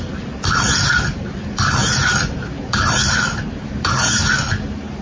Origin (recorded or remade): recorded